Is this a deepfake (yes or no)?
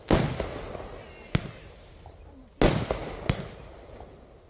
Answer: no